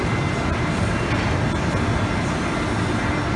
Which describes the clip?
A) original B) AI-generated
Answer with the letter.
A